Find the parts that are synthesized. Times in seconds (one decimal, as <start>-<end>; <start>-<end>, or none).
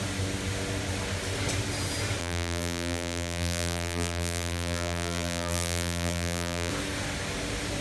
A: 2.2-6.7